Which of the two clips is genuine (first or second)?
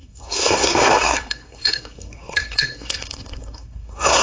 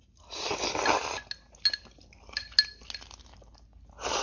second